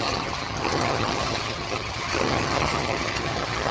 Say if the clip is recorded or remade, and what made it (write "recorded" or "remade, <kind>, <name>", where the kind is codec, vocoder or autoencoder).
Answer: remade, vocoder, HiFi-GAN